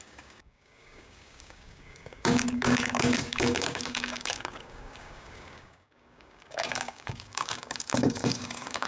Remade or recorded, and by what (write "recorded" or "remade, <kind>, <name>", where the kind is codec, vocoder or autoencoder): remade, codec, DAC